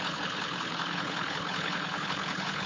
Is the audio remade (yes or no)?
yes